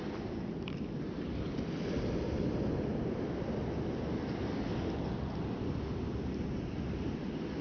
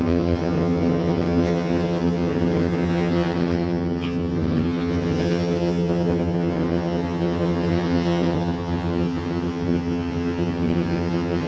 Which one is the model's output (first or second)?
second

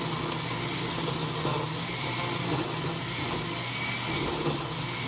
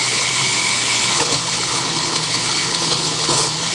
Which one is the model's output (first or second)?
second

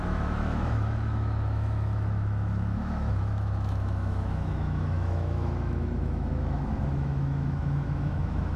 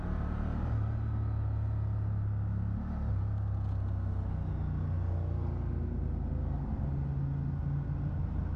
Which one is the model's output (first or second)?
first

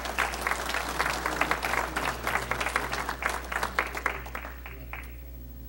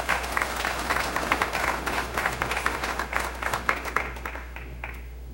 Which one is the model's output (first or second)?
second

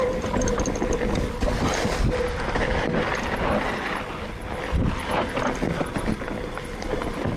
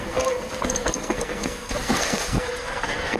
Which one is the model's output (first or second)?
second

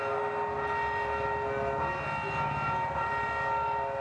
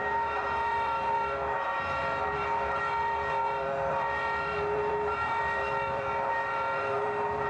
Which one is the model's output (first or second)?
second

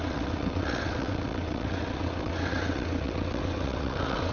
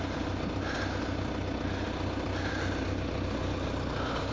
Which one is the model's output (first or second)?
first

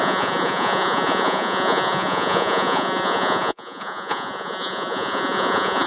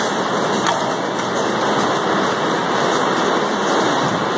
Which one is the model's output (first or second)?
first